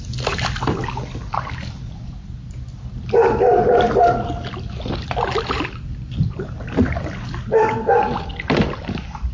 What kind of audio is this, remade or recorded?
recorded